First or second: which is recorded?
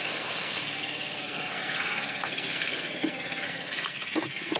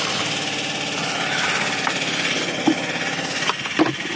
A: second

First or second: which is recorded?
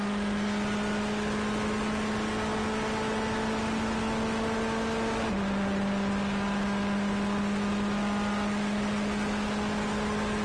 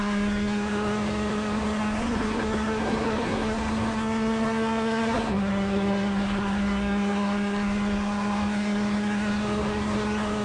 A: first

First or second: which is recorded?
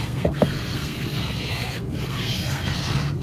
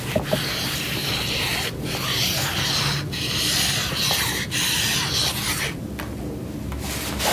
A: second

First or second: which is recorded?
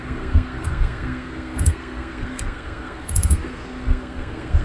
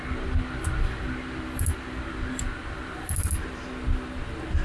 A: second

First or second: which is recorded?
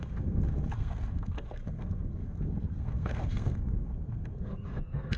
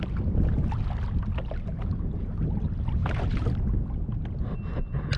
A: second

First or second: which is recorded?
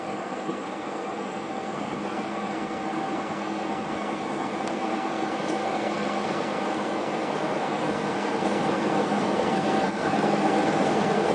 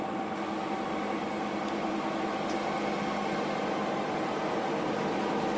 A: second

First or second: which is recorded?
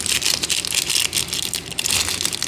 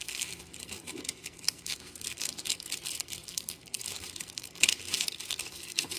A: first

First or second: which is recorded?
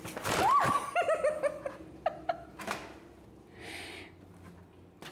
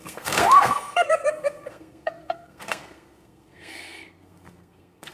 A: first